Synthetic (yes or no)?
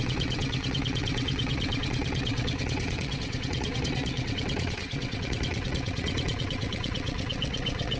yes